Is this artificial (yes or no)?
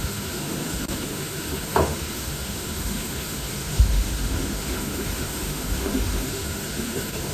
yes